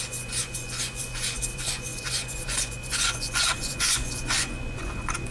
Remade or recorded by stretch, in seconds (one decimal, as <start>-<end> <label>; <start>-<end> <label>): 0.0-5.3 remade